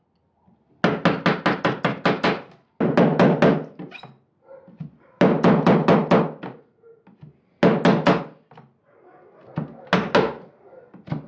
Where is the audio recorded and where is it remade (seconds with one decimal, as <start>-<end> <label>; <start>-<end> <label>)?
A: 0.0-11.3 recorded